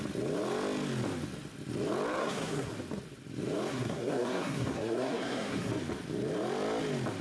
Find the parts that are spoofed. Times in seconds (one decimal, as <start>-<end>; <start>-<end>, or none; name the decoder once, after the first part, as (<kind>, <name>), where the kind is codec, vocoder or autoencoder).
2.2-2.7 (codec, SNAC); 3.7-5.7